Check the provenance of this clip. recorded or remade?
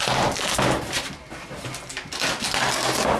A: recorded